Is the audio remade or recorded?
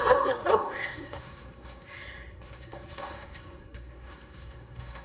remade